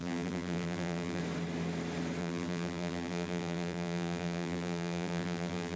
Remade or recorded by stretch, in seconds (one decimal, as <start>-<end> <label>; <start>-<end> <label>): 0.0-1.2 remade; 1.2-2.2 recorded; 2.2-5.8 remade